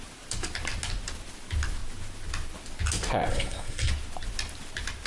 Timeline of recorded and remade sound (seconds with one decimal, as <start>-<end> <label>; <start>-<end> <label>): 0.0-3.3 recorded; 3.3-3.9 remade; 3.9-5.1 recorded